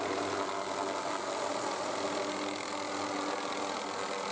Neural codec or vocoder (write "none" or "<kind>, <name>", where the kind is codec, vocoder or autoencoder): none